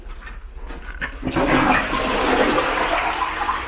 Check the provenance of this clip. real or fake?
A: real